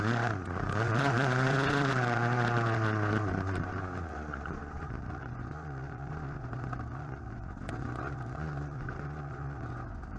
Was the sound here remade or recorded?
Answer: remade